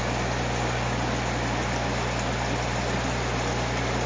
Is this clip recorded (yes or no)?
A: yes